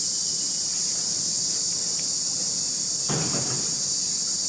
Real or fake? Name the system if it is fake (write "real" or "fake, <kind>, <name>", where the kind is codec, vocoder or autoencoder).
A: real